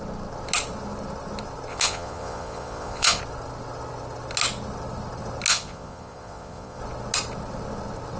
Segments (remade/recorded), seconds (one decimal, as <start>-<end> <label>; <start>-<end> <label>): 0.0-1.7 recorded; 1.7-3.2 remade; 3.2-5.5 recorded; 5.5-6.8 remade; 6.8-8.2 recorded